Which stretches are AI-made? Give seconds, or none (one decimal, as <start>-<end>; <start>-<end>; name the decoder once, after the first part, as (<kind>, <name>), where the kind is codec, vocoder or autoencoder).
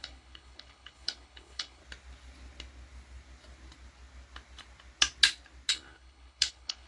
0.0-1.8 (codec, HILCodec); 5.7-6.9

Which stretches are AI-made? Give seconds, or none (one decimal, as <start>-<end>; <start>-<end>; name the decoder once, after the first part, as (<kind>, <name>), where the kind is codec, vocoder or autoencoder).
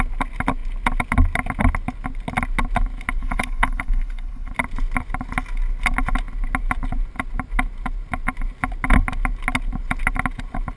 3.2-4.5 (codec, HILCodec)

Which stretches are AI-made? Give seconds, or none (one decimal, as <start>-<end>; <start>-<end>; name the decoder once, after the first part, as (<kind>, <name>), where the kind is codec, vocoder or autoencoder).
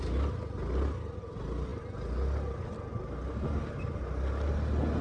none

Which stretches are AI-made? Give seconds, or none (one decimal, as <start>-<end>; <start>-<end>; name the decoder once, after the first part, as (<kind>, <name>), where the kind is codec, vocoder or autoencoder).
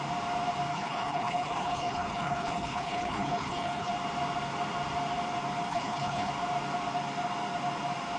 0.7-3.9 (codec, HILCodec); 5.7-6.3